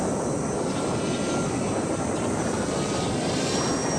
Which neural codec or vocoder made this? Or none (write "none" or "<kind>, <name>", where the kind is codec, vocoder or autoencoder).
none